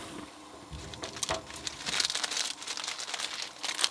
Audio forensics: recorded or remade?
recorded